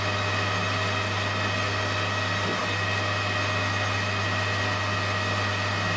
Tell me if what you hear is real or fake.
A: real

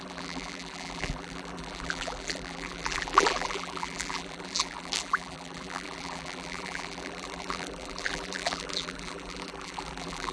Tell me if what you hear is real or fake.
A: fake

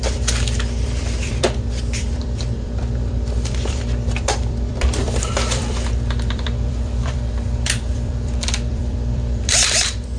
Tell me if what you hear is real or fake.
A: fake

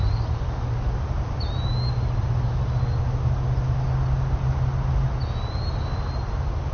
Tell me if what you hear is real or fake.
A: real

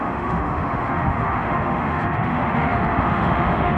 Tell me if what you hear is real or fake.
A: fake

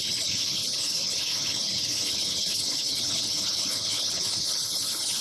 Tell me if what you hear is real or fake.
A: fake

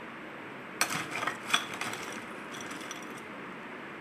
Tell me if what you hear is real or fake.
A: real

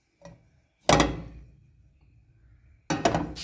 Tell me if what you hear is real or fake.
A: real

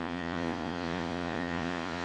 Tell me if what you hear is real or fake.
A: fake